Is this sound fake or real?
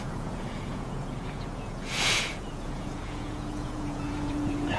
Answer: fake